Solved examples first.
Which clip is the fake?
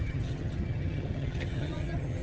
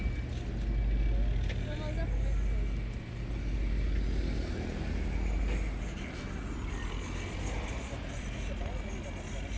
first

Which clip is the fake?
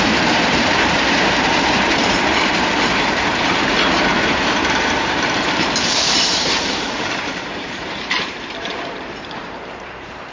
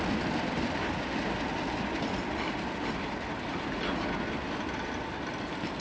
first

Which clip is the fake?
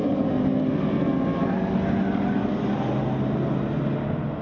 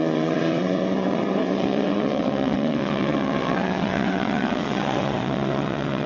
second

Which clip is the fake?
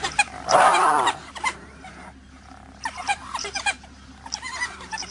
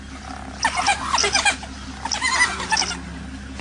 first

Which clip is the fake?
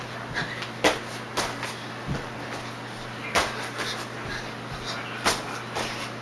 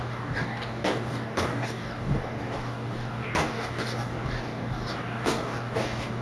second